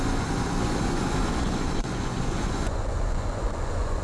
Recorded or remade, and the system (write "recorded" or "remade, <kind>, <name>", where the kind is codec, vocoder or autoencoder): remade, vocoder, Vocos